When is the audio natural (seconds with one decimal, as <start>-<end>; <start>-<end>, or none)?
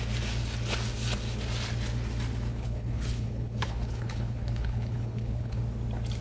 0.0-2.5; 5.6-6.2